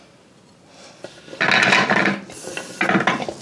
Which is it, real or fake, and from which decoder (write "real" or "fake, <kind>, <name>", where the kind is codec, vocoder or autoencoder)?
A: real